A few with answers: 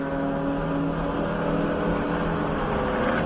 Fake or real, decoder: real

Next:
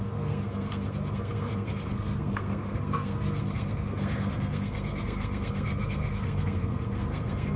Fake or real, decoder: fake, codec, SNAC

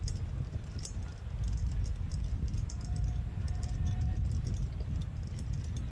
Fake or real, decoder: fake, vocoder, BigVGAN v2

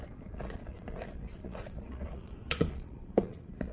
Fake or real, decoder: fake, vocoder, Vocos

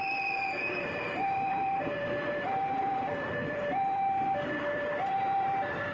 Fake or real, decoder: fake, vocoder, BigVGAN v2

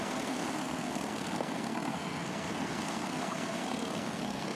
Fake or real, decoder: fake, codec, SNAC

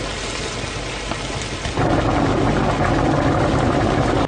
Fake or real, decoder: real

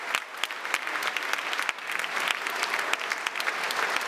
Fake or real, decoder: real